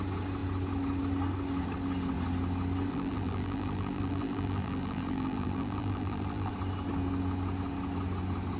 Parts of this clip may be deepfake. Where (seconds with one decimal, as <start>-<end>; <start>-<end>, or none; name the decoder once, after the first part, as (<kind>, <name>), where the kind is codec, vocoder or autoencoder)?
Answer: 2.9-6.5 (vocoder, BigVGAN v2)